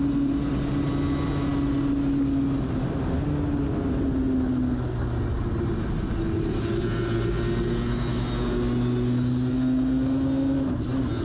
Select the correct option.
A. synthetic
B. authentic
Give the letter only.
B